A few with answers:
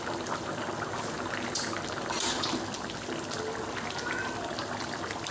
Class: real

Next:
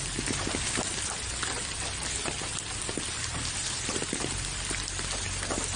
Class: real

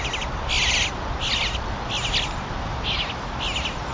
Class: real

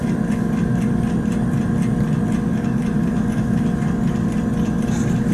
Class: real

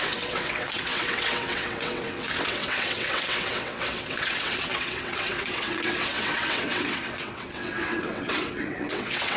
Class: fake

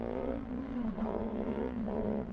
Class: fake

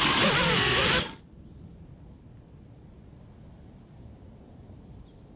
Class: real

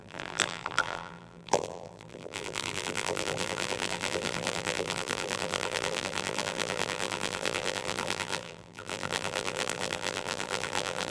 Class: fake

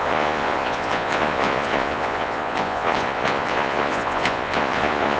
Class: fake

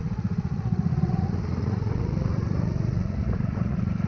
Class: fake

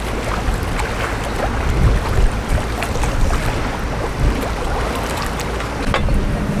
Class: real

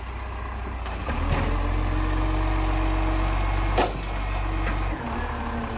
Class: real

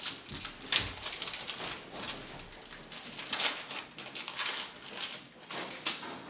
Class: real